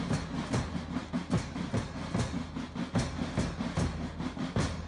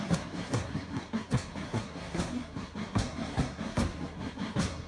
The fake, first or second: second